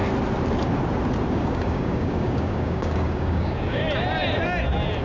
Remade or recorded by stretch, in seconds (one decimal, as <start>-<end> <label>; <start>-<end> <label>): 0.0-1.3 recorded; 1.3-3.8 remade; 3.8-5.0 recorded